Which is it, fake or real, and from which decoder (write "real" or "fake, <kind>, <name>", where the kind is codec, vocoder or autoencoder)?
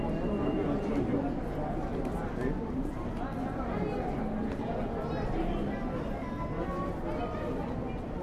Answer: real